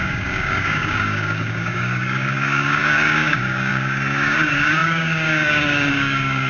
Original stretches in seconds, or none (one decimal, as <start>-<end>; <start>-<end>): none